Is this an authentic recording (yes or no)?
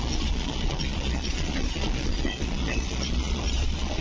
no